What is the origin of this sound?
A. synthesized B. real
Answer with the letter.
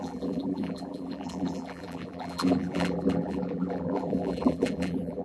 A